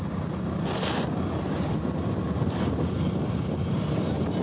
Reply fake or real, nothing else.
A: real